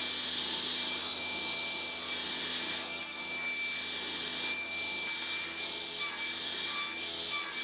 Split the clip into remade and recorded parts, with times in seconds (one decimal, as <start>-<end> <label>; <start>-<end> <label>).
0.0-2.7 recorded; 2.7-3.2 remade; 3.2-7.6 recorded